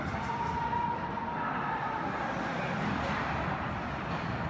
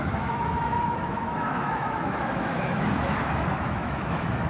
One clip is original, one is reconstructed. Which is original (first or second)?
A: first